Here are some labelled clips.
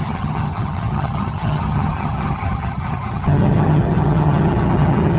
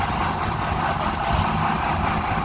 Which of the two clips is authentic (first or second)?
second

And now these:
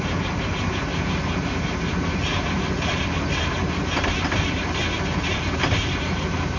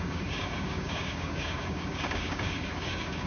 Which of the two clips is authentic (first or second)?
first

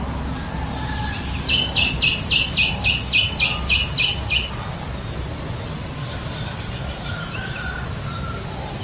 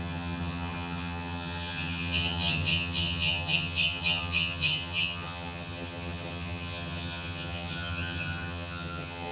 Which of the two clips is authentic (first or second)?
first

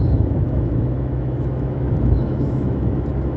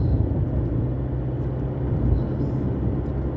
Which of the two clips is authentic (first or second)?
second